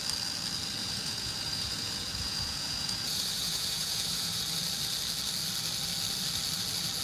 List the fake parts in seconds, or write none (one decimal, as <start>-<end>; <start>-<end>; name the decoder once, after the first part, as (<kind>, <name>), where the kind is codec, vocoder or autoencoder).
0.8-4.4 (vocoder, Vocos)